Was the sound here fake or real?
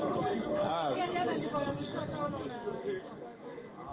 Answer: fake